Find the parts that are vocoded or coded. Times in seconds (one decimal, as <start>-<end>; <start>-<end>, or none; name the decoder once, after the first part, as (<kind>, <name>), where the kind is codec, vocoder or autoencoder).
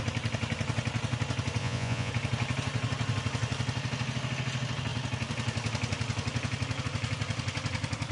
1.6-2.1 (vocoder, Vocos)